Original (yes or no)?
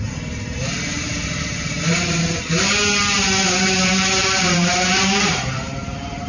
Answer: no